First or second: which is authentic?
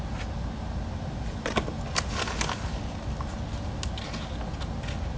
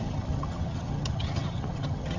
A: first